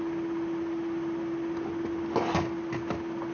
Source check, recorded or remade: recorded